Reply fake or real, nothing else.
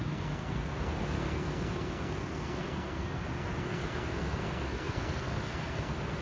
fake